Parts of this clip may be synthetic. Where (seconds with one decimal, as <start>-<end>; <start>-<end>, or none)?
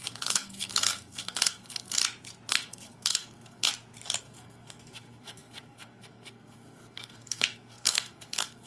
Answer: 0.0-2.0; 2.5-3.7; 4.2-8.7